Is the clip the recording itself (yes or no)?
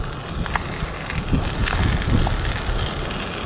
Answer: yes